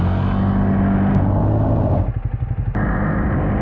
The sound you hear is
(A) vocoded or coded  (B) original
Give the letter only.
B